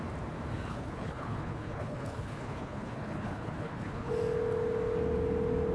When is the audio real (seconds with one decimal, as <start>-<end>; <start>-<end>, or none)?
0.0-0.7; 4.1-5.7